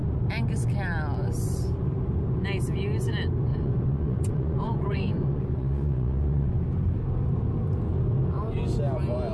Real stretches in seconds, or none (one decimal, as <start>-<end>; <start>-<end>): 0.0-3.5; 6.6-9.3